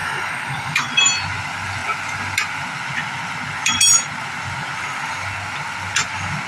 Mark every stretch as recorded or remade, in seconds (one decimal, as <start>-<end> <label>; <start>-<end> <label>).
0.0-0.9 remade; 0.9-6.5 recorded